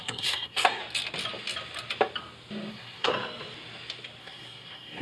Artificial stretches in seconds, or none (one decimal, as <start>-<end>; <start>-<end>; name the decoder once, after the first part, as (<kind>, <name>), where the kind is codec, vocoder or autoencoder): 0.0-0.8 (codec, SNAC); 2.7-3.1; 4.2-5.0